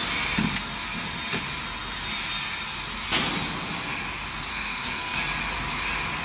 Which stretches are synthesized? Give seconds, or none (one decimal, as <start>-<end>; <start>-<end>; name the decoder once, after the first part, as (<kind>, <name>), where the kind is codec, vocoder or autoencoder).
4.5-5.2 (codec, SNAC)